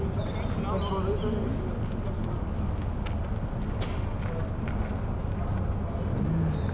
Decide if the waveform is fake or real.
real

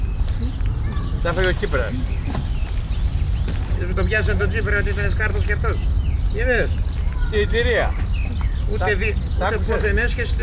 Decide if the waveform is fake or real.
real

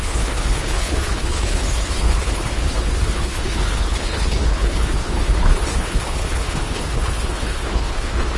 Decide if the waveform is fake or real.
fake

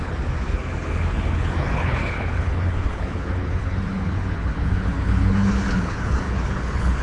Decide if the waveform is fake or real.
fake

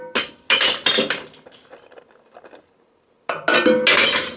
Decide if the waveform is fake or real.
real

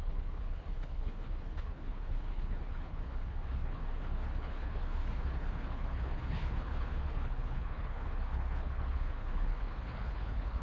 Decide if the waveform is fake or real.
fake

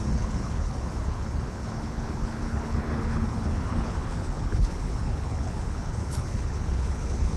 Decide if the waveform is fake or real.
fake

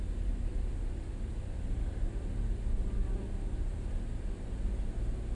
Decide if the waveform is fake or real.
real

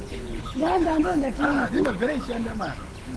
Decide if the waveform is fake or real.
fake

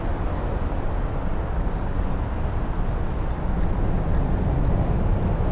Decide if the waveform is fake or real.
real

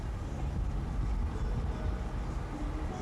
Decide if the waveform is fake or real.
real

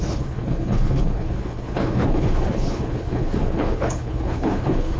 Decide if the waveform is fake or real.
fake